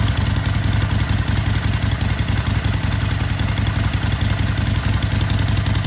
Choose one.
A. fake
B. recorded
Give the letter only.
B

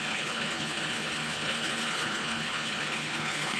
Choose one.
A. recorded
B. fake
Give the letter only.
B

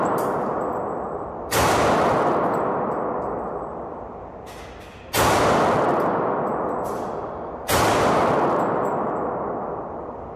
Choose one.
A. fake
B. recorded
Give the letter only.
B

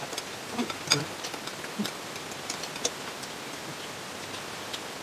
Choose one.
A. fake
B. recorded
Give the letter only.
B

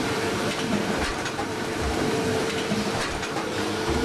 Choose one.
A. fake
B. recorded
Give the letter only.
A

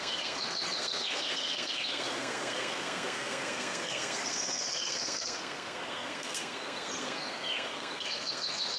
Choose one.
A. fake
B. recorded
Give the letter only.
A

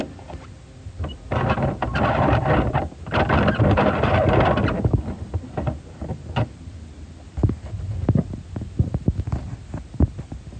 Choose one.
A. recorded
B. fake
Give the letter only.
A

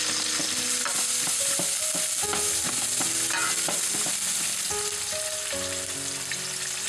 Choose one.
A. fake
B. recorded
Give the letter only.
B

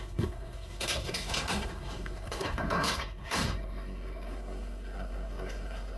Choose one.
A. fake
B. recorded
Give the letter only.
A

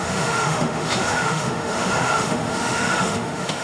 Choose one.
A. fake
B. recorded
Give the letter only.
A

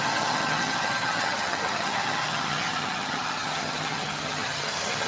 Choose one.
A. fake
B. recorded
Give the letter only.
A